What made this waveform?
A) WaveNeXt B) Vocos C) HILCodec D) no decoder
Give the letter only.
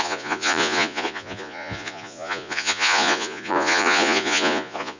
B